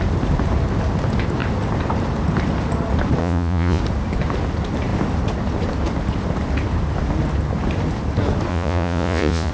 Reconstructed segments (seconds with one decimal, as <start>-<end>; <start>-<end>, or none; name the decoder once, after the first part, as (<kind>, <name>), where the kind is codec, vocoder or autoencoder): 3.2-3.8 (vocoder, Vocos); 8.5-9.5